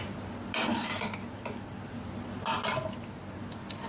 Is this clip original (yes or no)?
yes